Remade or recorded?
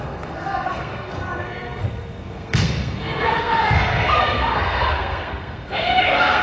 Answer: remade